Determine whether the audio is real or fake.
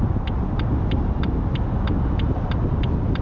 real